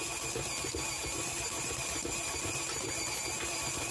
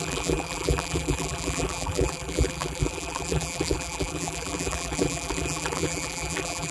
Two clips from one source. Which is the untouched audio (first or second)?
first